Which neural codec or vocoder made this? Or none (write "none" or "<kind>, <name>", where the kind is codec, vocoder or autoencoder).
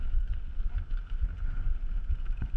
none